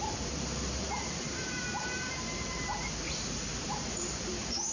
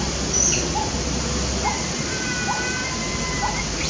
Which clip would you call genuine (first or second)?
second